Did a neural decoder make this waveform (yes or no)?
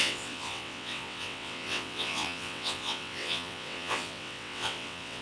yes